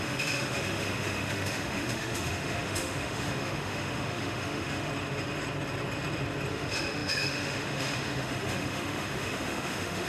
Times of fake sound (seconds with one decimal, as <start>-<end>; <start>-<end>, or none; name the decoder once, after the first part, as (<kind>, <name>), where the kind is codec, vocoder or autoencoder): 0.0-4.9 (autoencoder, DAC-VAE); 6.5-10.1